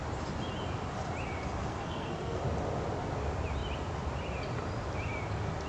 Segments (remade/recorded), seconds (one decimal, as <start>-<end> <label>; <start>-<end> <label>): 0.0-1.6 recorded; 1.6-2.4 remade; 2.4-5.7 recorded